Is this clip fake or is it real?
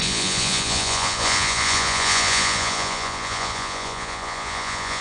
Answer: fake